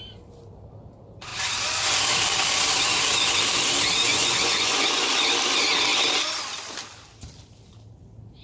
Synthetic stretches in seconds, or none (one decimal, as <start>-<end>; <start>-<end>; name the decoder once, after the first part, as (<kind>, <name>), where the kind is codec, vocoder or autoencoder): 4.1-5.1 (vocoder, Vocos)